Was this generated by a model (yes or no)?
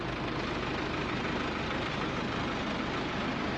no